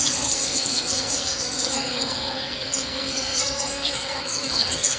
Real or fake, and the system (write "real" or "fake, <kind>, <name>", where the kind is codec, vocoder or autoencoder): fake, codec, SNAC